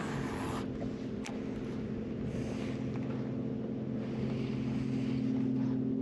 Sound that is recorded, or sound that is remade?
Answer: recorded